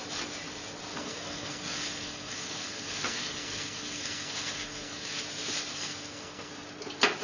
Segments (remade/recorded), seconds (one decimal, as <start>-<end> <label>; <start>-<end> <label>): 0.0-0.9 recorded; 0.9-5.2 remade; 5.2-5.7 recorded; 5.7-6.5 remade; 6.5-7.2 recorded